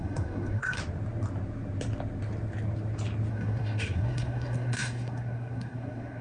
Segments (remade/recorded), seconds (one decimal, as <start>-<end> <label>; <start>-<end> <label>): 0.0-0.8 remade; 0.8-3.3 recorded; 3.3-6.2 remade